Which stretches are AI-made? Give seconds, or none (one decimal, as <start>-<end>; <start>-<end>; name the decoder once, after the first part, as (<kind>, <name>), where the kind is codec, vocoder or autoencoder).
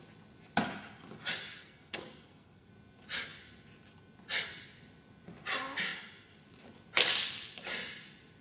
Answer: 1.6-2.7 (codec, SNAC)